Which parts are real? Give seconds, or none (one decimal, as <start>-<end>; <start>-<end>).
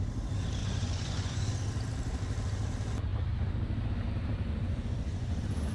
0.0-0.6; 1.5-4.5